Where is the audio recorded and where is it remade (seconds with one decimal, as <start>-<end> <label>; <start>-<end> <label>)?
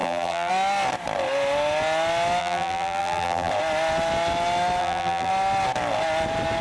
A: 0.0-0.5 remade; 0.5-2.4 recorded; 2.4-3.5 remade; 3.5-4.8 recorded; 4.8-5.3 remade; 5.3-6.6 recorded